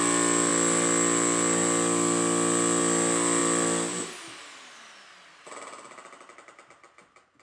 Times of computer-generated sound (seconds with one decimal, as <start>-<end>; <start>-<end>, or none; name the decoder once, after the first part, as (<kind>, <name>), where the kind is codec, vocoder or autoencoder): none

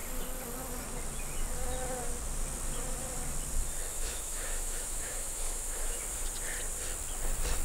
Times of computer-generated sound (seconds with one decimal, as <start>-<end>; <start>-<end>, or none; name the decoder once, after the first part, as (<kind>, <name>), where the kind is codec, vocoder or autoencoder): 3.9-6.0 (autoencoder, DAC-VAE)